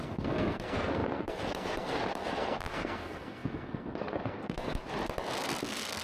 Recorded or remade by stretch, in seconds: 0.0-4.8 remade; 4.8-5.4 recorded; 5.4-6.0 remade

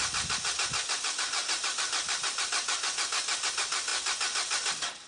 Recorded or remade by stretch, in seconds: 0.0-5.1 recorded

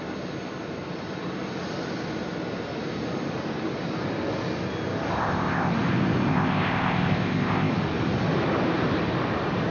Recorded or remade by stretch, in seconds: 0.0-5.2 recorded; 5.2-5.7 remade; 5.7-6.3 recorded; 6.3-7.7 remade; 7.7-9.7 recorded

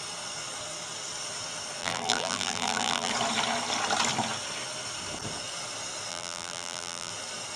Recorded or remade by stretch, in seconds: 0.0-1.8 recorded; 1.8-3.1 remade; 3.1-6.1 recorded; 6.1-7.1 remade; 7.1-7.6 recorded

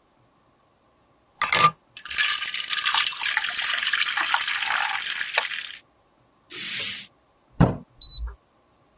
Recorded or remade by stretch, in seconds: 0.0-9.0 recorded

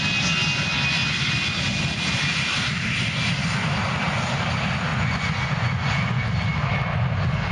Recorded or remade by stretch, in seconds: 0.0-4.9 recorded; 4.9-6.3 remade; 6.3-7.5 recorded

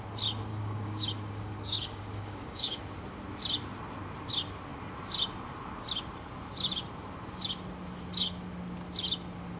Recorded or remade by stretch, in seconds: 0.0-0.5 recorded; 0.5-2.8 remade; 2.8-9.6 recorded

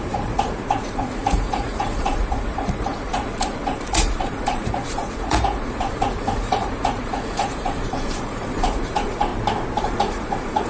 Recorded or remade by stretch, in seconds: 0.0-9.3 remade; 9.3-9.8 recorded; 9.8-10.7 remade